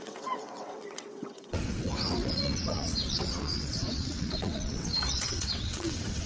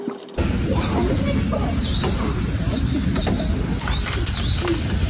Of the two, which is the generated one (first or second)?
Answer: first